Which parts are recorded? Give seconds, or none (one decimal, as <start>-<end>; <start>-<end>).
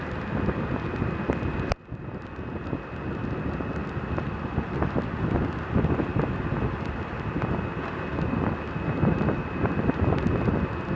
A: 0.0-11.0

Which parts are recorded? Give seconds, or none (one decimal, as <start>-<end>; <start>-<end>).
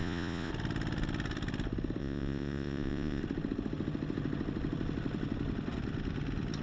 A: 0.5-2.0; 3.2-6.6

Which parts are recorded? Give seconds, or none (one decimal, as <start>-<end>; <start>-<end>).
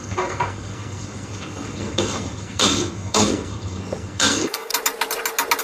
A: 4.7-5.6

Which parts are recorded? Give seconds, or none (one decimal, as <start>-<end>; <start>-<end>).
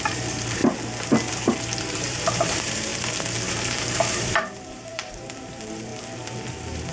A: 0.6-1.3; 2.9-3.5; 5.9-6.5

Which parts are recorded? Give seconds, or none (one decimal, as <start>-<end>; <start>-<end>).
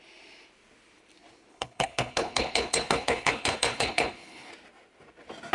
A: 0.0-1.5; 4.5-5.5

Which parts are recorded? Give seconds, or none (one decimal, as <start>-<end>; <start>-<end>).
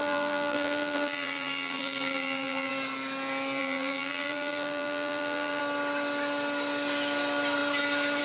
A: 2.7-3.6; 5.6-8.2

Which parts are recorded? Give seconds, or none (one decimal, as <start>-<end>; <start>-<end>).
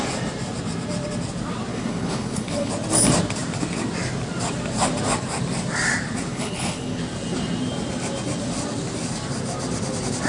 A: 0.0-1.7; 2.7-6.3; 7.0-10.3